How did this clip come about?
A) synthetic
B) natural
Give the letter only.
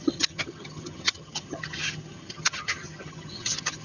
A